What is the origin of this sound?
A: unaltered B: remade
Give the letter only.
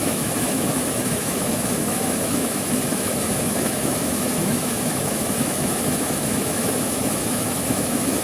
B